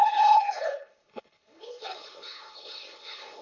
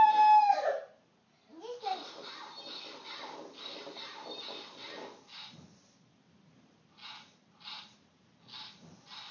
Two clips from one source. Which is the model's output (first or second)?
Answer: first